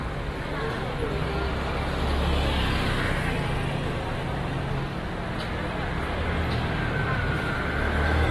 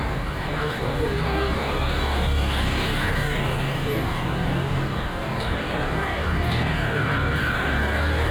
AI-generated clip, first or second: second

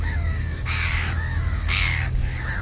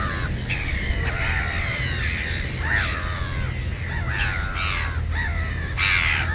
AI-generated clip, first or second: first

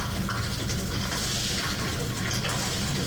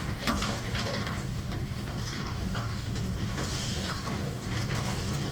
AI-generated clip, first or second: second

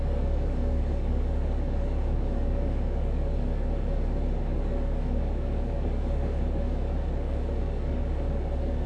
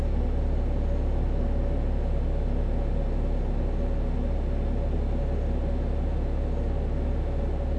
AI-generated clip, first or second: first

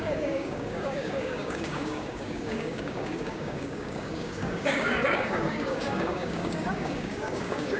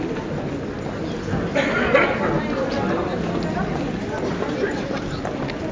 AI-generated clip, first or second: first